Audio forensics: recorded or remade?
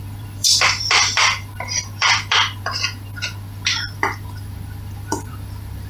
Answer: remade